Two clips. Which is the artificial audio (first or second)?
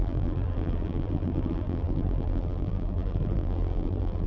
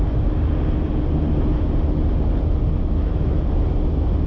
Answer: first